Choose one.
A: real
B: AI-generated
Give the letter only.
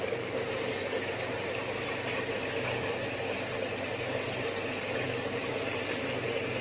A